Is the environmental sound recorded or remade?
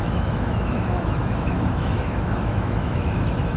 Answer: remade